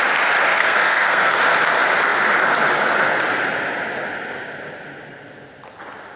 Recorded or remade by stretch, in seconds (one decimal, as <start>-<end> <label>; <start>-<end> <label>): 0.0-0.5 recorded; 0.5-1.4 remade; 1.4-6.2 recorded

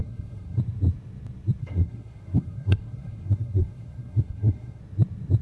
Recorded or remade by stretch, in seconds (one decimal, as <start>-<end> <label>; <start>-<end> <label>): 0.0-0.6 remade; 0.6-1.6 recorded; 1.6-4.8 remade; 4.8-5.4 recorded

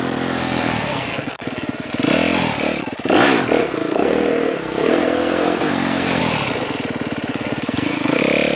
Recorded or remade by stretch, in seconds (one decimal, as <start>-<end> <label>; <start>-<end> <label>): 0.0-0.4 recorded; 0.4-1.9 remade; 1.9-3.6 recorded; 3.6-6.2 remade; 6.2-7.3 recorded; 7.3-8.2 remade; 8.2-8.6 recorded

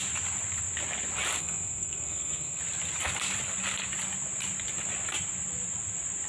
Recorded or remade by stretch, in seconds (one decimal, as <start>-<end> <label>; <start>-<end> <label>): 0.0-1.4 recorded; 1.4-2.6 remade; 2.6-6.3 recorded

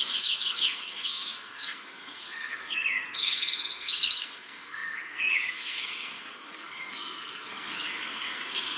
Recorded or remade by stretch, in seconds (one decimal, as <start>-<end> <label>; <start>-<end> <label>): 0.0-8.8 remade

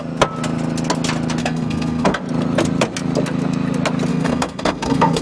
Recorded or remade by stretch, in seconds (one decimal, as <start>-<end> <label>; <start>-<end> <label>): 0.0-1.4 recorded; 1.4-2.2 remade; 2.2-4.1 recorded; 4.1-5.2 remade